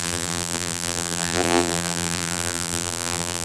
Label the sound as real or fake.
fake